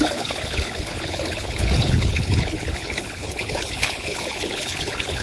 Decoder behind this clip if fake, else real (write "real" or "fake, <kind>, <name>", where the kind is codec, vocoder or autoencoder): fake, codec, HILCodec